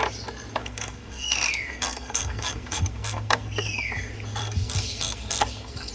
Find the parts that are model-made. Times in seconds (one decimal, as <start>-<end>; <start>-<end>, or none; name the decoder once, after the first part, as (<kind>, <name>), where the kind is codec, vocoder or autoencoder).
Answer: 0.6-3.9 (codec, SNAC); 4.4-5.9